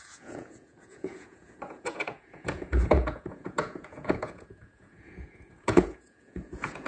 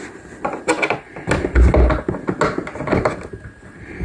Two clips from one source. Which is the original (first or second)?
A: second